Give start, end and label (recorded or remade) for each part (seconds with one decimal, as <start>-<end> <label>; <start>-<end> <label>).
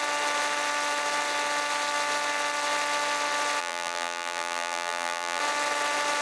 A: 0.0-3.6 recorded; 3.6-5.4 remade; 5.4-6.2 recorded